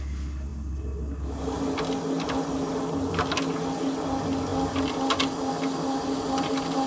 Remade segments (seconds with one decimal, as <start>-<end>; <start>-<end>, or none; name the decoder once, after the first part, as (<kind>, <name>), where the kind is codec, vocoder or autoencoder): none